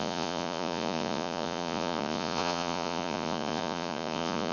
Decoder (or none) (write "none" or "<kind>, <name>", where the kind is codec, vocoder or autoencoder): vocoder, Vocos